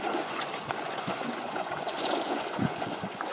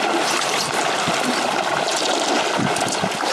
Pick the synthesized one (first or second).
first